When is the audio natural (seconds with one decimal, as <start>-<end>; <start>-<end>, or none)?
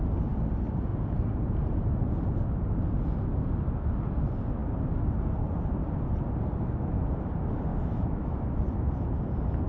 0.0-7.7; 8.5-9.7